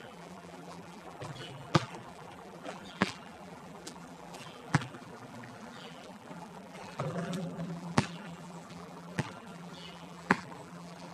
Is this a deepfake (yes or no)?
yes